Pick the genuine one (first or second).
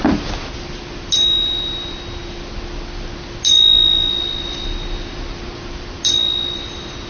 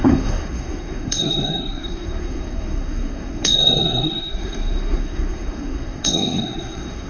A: first